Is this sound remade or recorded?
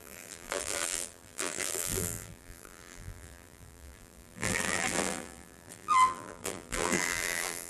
remade